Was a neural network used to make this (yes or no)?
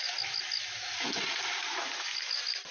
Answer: no